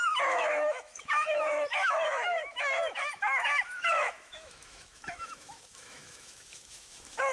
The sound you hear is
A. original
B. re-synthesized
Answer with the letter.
B